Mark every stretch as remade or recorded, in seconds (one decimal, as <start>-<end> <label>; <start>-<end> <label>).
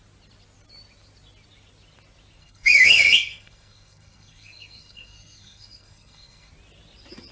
0.0-2.4 recorded; 2.4-6.5 remade; 6.5-7.3 recorded